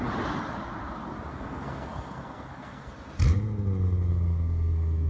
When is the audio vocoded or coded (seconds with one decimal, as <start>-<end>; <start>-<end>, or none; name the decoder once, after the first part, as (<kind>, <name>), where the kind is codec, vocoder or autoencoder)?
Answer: 1.3-2.9 (codec, SNAC); 4.1-5.1